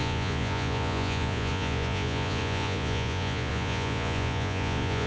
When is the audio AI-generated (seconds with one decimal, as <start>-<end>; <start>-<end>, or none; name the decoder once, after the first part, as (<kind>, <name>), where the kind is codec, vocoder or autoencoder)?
0.0-5.1 (vocoder, Vocos)